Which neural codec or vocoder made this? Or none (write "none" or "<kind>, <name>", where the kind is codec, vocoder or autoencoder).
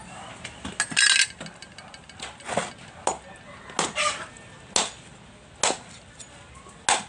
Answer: none